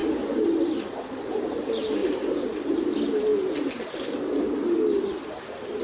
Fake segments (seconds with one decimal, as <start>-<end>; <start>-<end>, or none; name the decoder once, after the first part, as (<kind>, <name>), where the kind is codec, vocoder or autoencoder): none